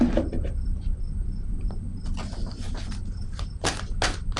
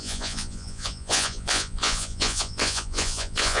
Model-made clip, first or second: second